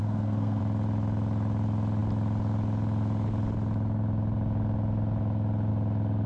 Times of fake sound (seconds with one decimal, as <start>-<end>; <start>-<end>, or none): 0.0-0.6